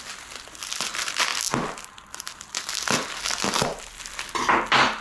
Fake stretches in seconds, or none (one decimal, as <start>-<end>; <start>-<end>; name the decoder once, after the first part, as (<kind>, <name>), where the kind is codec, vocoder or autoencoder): none